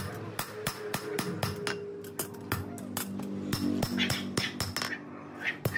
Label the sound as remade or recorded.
recorded